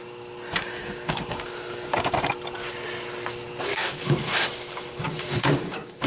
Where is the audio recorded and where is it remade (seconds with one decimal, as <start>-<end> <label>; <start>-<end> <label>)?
0.0-0.6 recorded; 0.6-2.1 remade; 2.1-3.7 recorded; 3.7-6.1 remade